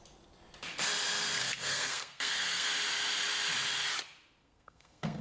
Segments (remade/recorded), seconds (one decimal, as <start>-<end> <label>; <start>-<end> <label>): 0.0-1.4 recorded; 1.4-2.7 remade; 2.7-4.4 recorded; 4.4-5.2 remade